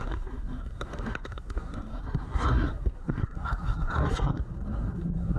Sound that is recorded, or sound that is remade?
remade